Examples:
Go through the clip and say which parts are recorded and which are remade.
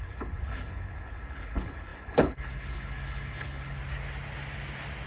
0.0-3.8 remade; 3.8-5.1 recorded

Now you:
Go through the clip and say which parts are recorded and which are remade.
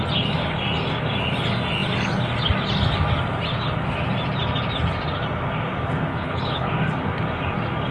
0.0-6.1 recorded; 6.1-6.7 remade; 6.7-7.9 recorded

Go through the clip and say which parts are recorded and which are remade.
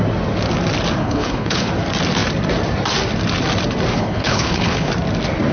0.0-1.0 recorded; 1.0-1.7 remade; 1.7-3.9 recorded; 3.9-4.9 remade; 4.9-5.5 recorded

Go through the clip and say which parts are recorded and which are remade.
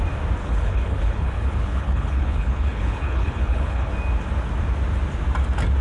0.0-0.4 recorded; 0.4-3.9 remade; 3.9-5.8 recorded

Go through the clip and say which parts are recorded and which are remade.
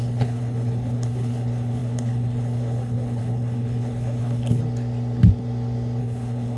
0.0-4.6 remade; 4.6-6.0 recorded; 6.0-6.6 remade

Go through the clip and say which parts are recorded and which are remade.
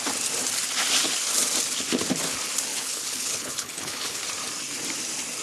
0.0-2.7 recorded; 2.7-4.2 remade; 4.2-5.4 recorded